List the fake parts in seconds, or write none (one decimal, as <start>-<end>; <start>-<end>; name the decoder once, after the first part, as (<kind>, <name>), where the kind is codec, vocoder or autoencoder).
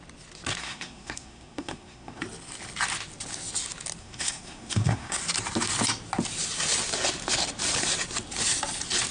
0.6-2.2 (codec, SNAC); 4.0-5.2